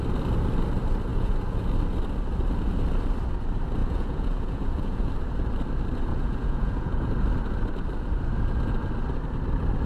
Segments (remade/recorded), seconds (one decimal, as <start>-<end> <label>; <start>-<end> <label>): 0.0-1.1 recorded; 1.1-1.7 remade; 1.7-3.8 recorded; 3.8-5.1 remade; 5.1-6.1 recorded; 6.1-7.1 remade; 7.1-9.9 recorded